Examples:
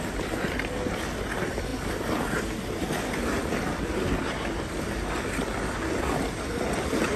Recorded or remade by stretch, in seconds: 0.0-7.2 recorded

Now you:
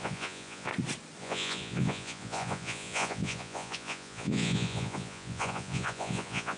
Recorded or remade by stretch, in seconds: 0.0-0.7 remade; 0.7-1.2 recorded; 1.2-6.6 remade

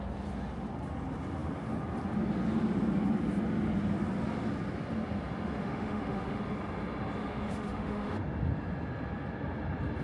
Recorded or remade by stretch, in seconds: 0.0-5.6 recorded; 5.6-6.4 remade; 6.4-7.2 recorded; 7.2-8.2 remade; 8.2-10.0 recorded